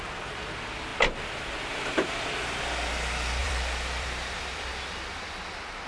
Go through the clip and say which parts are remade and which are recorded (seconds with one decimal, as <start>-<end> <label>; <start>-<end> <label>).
0.0-3.4 recorded; 3.4-4.7 remade; 4.7-5.9 recorded

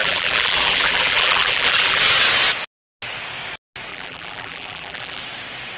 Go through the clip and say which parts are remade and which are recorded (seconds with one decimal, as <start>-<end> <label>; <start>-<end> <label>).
0.0-2.0 remade; 2.0-3.9 recorded; 3.9-5.2 remade; 5.2-5.8 recorded